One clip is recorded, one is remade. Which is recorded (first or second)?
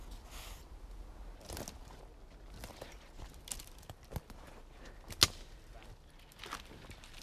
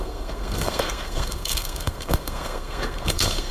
first